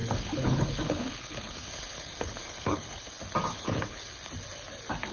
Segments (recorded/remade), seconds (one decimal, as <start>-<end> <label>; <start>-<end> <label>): 0.0-3.1 remade; 3.1-3.5 recorded; 3.5-4.1 remade; 4.1-5.1 recorded